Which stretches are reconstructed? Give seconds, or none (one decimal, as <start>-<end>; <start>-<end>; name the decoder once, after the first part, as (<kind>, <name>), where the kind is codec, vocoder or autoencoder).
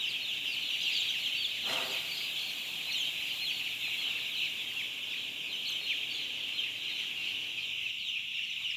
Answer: 7.2-7.9 (autoencoder, DAC-VAE)